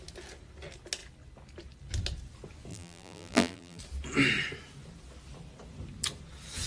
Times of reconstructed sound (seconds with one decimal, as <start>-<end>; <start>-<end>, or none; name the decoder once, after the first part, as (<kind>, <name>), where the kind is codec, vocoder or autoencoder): 2.7-3.8 (vocoder, BigVGAN v2)